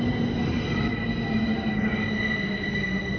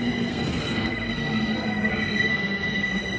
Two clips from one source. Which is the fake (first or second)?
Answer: second